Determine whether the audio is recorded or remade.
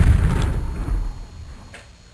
recorded